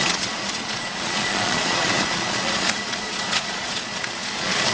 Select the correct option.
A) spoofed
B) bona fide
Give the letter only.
A